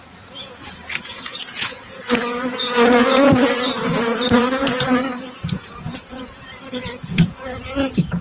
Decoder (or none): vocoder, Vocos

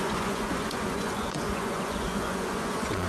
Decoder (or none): vocoder, Vocos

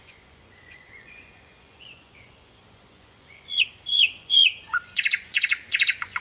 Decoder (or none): vocoder, Vocos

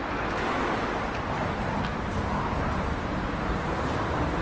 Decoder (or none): none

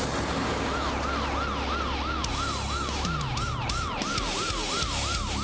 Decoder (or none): none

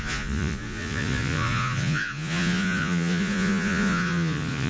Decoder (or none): vocoder, Vocos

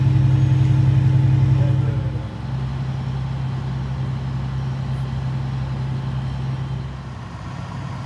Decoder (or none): none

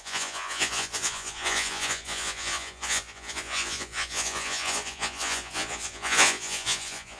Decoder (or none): vocoder, Vocos